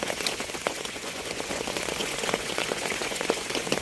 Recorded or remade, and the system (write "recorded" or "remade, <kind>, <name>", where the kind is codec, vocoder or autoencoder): remade, vocoder, Vocos